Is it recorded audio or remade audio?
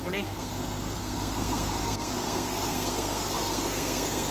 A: remade